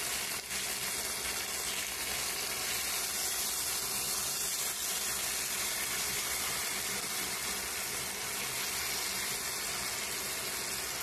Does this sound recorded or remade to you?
recorded